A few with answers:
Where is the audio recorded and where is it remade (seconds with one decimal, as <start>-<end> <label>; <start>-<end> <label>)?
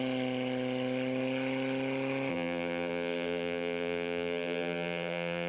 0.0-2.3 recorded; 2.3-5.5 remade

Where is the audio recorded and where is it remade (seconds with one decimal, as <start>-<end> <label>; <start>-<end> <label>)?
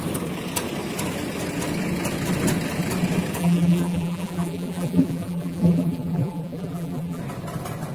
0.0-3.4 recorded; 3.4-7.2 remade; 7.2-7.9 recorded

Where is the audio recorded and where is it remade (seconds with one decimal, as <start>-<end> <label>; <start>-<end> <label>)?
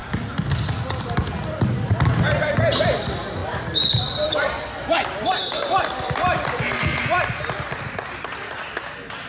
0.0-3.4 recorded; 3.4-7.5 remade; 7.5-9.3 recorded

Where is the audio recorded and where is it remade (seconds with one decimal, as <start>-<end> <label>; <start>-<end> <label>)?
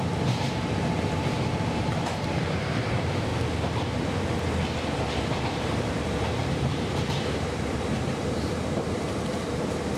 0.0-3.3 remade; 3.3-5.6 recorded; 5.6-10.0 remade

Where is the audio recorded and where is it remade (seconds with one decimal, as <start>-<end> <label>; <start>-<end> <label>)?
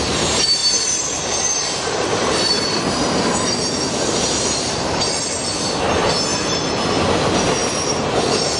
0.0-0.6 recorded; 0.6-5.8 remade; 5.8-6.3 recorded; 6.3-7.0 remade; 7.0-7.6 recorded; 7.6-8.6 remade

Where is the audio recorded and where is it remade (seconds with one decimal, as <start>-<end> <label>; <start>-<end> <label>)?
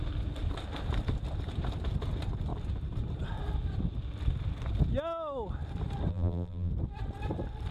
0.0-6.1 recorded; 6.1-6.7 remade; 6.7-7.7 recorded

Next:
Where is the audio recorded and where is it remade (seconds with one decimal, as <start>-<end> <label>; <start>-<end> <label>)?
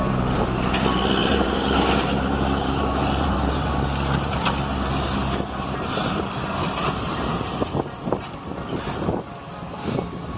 0.0-1.2 recorded; 1.2-4.5 remade; 4.5-10.4 recorded